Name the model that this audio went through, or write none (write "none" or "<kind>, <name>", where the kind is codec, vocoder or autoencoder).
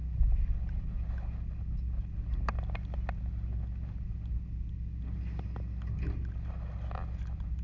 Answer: none